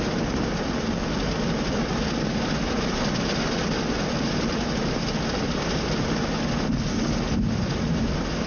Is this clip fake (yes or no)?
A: no